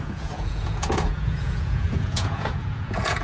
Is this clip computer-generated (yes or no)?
yes